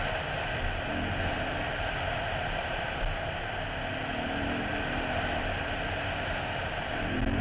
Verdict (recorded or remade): recorded